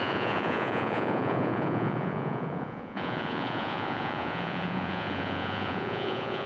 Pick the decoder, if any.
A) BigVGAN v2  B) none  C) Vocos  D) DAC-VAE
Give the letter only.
C